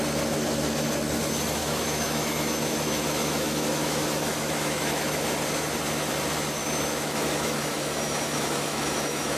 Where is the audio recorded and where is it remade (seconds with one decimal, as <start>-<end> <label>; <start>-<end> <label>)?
0.0-1.6 recorded; 1.6-5.2 remade; 5.2-6.6 recorded; 6.6-9.4 remade